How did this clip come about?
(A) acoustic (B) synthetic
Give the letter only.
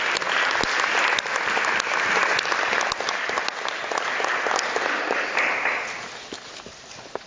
A